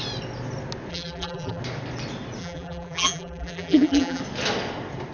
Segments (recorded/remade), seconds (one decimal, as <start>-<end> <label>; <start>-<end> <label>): 0.0-0.9 recorded; 0.9-1.6 remade; 1.6-2.4 recorded; 2.4-4.2 remade; 4.2-5.1 recorded